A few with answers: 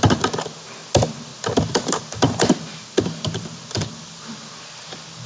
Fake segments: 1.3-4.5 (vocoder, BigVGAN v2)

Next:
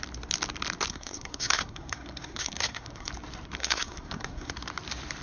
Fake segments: 0.9-3.1 (codec, SNAC); 3.6-4.5